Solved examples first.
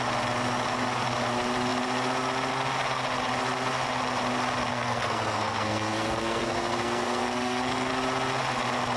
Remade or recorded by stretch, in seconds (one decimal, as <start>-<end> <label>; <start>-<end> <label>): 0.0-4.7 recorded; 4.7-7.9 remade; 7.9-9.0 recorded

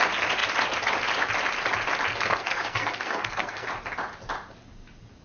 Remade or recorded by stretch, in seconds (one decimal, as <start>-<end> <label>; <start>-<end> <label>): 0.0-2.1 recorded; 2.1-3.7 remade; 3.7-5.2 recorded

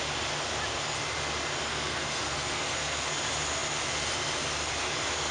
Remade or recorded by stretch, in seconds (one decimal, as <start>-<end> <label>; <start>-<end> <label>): 0.0-1.7 recorded; 1.7-3.1 remade; 3.1-5.3 recorded

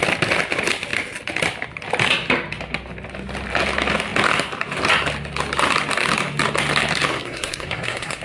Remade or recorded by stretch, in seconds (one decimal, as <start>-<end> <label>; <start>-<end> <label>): 0.0-7.1 recorded; 7.1-8.2 remade